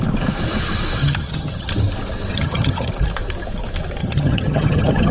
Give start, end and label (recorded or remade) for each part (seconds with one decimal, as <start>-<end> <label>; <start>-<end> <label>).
0.0-1.0 recorded; 1.0-1.7 remade; 1.7-2.3 recorded; 2.3-2.9 remade; 2.9-4.0 recorded; 4.0-5.1 remade